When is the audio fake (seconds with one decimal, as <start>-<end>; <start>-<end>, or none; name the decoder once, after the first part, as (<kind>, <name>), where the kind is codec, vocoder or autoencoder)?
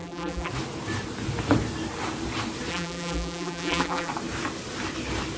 0.0-0.5 (vocoder, BigVGAN v2); 2.7-4.1